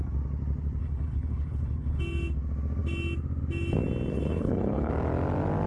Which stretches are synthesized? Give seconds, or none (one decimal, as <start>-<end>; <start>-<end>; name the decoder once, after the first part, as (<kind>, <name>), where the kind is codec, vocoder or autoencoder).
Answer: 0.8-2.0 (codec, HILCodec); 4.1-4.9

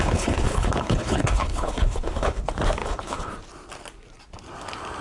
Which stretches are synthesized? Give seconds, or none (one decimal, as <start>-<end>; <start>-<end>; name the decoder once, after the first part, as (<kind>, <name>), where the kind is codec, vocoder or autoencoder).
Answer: 0.0-2.4 (codec, HILCodec); 2.8-3.3

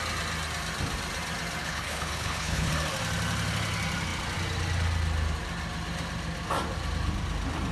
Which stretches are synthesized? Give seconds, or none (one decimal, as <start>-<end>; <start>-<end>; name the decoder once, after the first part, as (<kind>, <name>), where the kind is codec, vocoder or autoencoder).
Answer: 1.6-2.7 (codec, HILCodec)